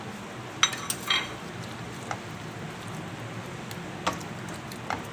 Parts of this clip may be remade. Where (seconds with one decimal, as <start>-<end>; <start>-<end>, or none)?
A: none